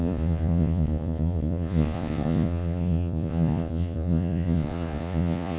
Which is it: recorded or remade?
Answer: remade